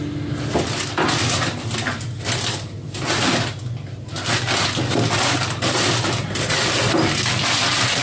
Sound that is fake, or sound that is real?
real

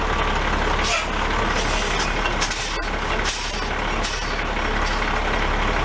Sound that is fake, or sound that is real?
real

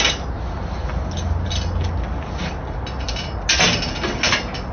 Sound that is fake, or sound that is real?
real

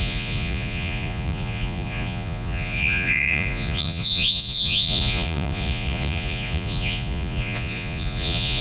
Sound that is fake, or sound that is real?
fake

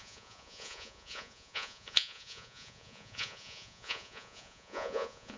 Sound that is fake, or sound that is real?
fake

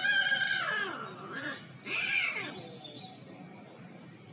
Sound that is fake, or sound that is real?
real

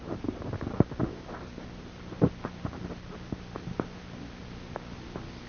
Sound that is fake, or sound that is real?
real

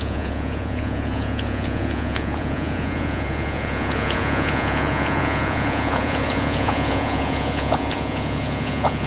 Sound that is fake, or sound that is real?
fake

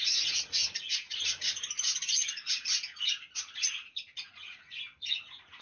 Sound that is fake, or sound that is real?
fake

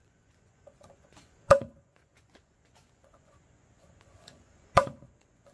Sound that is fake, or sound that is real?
fake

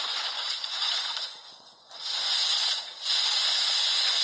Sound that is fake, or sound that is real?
fake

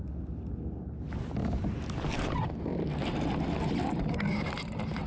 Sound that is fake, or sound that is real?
real